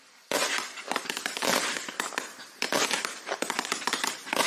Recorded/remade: remade